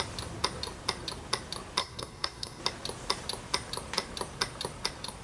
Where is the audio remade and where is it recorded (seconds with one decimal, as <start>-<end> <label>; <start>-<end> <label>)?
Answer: 0.0-1.8 recorded; 1.8-2.6 remade; 2.6-5.2 recorded